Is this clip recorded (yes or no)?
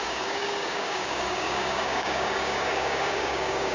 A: no